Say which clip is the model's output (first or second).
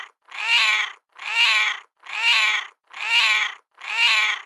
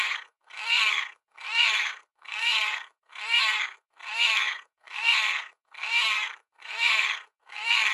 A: second